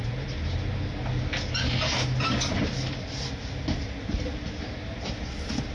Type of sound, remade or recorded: recorded